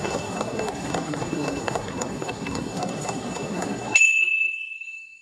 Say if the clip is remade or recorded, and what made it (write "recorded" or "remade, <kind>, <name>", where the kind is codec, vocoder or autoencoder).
remade, codec, SNAC